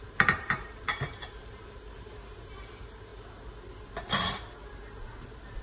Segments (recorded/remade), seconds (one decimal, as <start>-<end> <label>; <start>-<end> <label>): 0.0-3.1 remade; 3.1-5.6 recorded